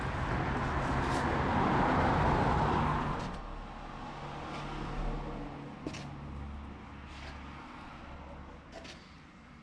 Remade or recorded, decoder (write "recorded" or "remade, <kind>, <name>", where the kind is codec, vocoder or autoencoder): recorded